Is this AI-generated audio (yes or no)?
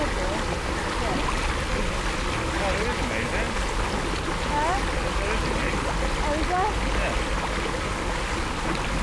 no